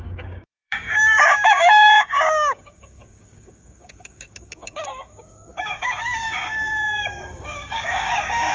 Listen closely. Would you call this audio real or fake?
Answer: fake